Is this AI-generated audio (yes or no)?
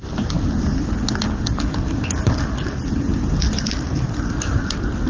no